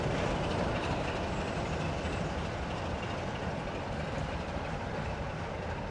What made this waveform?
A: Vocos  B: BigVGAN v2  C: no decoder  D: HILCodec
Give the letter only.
B